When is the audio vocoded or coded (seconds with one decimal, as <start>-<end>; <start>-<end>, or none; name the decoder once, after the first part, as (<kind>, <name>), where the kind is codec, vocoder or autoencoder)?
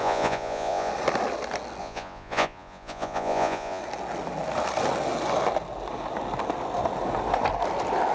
0.0-0.9 (vocoder, Vocos); 1.8-3.8